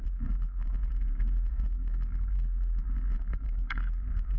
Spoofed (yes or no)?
yes